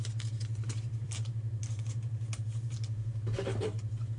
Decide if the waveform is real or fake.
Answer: fake